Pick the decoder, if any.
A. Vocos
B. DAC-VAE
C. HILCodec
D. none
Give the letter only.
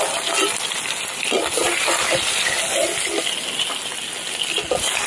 D